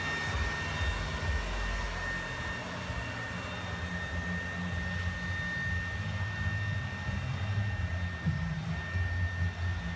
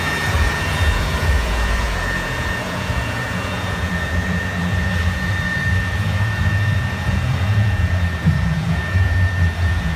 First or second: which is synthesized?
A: second